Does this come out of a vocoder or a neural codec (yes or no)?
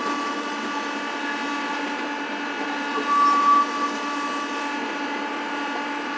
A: no